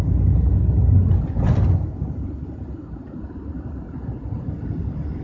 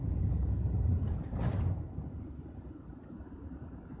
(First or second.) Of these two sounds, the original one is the first